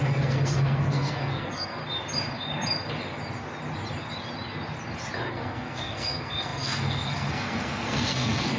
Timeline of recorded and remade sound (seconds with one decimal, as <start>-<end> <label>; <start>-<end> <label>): 0.0-1.8 remade; 1.8-5.3 recorded; 5.3-8.6 remade